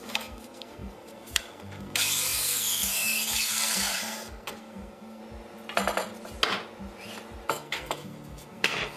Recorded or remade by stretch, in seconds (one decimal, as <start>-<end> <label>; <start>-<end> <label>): 0.0-5.2 remade; 5.2-7.5 recorded; 7.5-9.0 remade